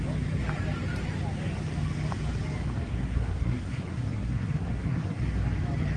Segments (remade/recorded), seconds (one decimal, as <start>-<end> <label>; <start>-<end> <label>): 0.0-2.9 recorded; 2.9-5.2 remade; 5.2-6.0 recorded